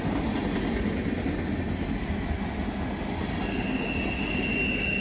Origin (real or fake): real